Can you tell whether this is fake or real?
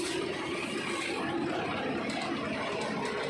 real